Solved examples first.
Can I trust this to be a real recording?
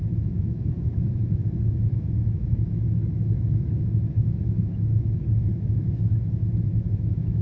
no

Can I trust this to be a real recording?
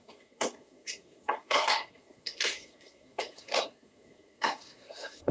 no